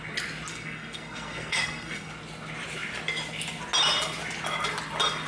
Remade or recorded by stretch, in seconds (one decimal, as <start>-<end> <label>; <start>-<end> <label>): 0.0-0.5 recorded; 0.5-2.1 remade; 2.1-5.3 recorded